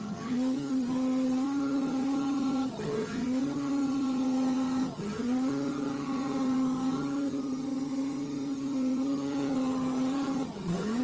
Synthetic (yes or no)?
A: yes